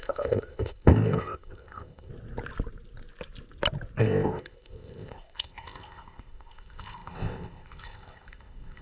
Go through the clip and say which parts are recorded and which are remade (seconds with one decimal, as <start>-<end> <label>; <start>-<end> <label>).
0.0-2.1 remade; 2.1-4.0 recorded; 4.0-8.8 remade